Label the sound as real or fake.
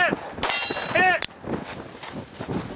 real